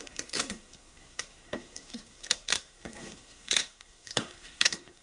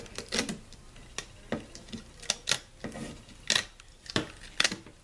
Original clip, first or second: second